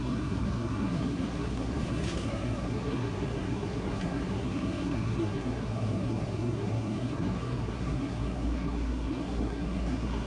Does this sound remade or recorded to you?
remade